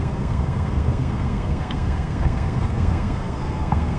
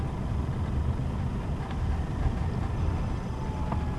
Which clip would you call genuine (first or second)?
second